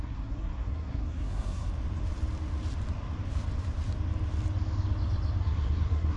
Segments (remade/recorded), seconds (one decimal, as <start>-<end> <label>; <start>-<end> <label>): 0.0-1.7 remade; 1.7-5.4 recorded; 5.4-6.2 remade